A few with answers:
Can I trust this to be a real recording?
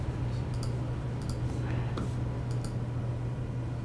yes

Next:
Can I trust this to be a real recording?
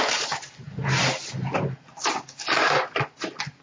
yes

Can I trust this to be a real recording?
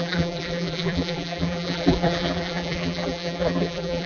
no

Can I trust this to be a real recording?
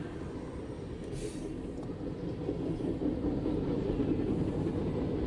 yes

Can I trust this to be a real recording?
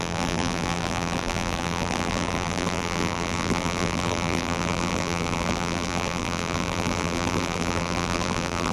no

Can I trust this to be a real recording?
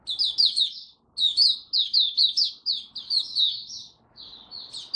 yes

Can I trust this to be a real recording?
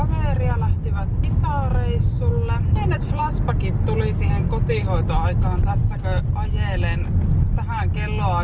yes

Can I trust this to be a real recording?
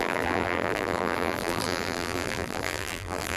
no